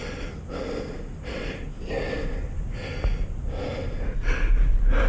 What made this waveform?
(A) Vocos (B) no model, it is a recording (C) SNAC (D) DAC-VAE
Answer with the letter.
B